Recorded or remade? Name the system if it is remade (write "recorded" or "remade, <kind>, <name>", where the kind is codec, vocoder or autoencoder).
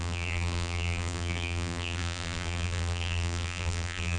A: remade, vocoder, BigVGAN v2